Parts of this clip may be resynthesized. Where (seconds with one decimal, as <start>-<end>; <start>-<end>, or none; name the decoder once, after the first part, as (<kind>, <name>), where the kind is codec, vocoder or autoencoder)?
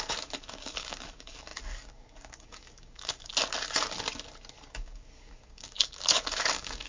0.0-3.3 (codec, DAC); 4.7-6.9